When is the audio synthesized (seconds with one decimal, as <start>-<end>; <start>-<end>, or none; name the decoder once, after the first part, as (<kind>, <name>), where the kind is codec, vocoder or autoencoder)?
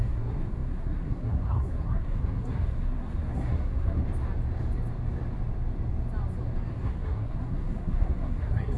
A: 0.0-4.0 (codec, SNAC); 6.7-8.8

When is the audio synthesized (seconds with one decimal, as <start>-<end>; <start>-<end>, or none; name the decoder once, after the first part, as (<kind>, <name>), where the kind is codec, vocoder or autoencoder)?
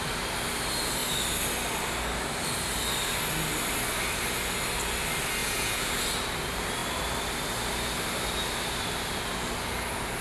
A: 5.4-6.0 (vocoder, Vocos)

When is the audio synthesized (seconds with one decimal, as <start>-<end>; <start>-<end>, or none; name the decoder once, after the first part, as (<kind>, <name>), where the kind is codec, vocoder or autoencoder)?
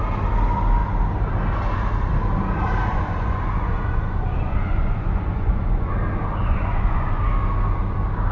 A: 2.9-5.9 (vocoder, Vocos); 6.4-7.2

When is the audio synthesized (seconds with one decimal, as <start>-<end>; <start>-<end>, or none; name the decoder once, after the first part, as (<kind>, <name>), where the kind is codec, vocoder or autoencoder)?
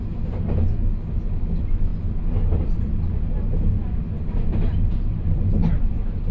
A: none